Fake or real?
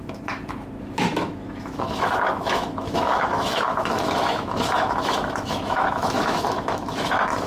fake